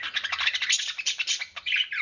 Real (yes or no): yes